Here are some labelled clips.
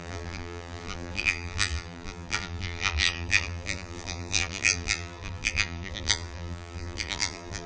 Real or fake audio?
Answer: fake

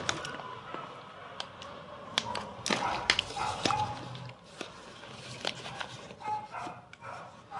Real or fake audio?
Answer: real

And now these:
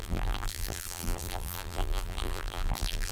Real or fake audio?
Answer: fake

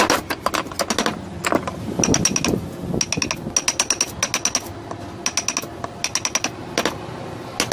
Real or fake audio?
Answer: real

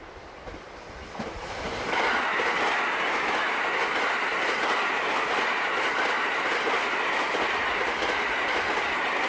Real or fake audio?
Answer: real